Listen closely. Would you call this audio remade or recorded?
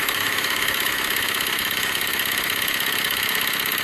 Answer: remade